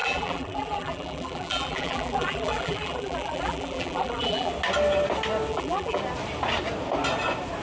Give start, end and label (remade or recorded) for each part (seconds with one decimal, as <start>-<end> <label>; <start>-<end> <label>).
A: 0.0-4.5 remade; 4.5-5.5 recorded; 5.5-6.0 remade; 6.0-7.6 recorded